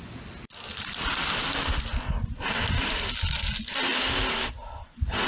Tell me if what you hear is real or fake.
real